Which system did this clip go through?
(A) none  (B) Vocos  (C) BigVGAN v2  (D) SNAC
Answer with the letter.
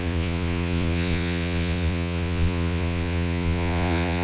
B